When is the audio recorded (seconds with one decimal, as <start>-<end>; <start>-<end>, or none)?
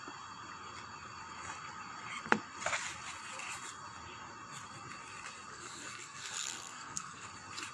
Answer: 0.0-5.5; 7.3-7.7